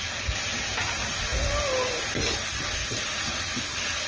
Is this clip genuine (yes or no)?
yes